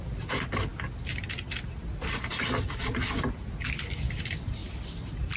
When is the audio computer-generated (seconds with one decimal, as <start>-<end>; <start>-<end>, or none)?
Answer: none